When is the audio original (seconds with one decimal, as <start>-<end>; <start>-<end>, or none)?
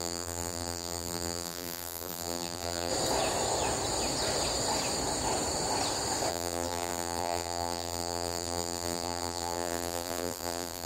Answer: 2.9-6.3